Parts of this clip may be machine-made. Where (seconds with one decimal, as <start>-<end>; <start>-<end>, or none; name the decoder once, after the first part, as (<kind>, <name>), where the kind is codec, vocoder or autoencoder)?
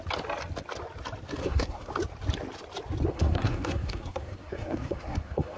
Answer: 1.4-1.9 (codec, SNAC); 3.1-5.6